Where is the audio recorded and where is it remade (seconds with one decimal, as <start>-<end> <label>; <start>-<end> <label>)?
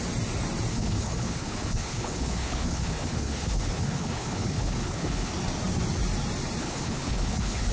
0.0-0.7 recorded; 0.7-5.3 remade; 5.3-6.6 recorded; 6.6-7.7 remade